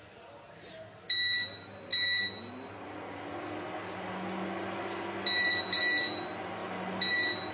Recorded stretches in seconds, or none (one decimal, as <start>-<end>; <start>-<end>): 0.0-7.5